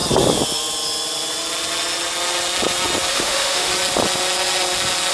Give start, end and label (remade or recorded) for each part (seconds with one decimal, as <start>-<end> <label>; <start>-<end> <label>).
0.0-3.1 recorded; 3.1-3.7 remade; 3.7-5.1 recorded

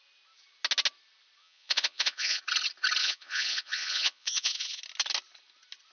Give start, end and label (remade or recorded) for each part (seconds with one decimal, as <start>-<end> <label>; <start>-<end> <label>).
0.0-1.4 recorded; 1.4-2.4 remade; 2.4-3.0 recorded; 3.0-4.8 remade; 4.8-5.9 recorded

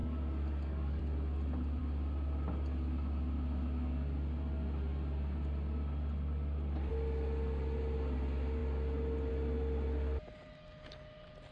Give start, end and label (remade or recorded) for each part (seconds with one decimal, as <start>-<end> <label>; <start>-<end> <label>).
0.0-1.0 remade; 1.0-11.5 recorded

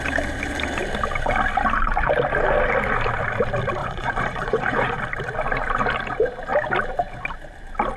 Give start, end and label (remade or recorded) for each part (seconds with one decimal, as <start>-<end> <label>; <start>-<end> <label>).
0.0-3.8 recorded; 3.8-5.0 remade; 5.0-8.0 recorded

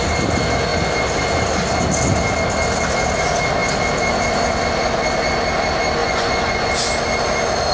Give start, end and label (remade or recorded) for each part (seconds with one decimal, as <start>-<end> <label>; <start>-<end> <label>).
0.0-6.0 recorded; 6.0-6.7 remade; 6.7-7.7 recorded

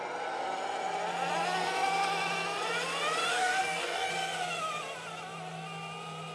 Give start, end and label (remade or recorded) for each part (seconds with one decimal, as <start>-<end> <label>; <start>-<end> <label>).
0.0-3.3 recorded; 3.3-4.1 remade; 4.1-6.3 recorded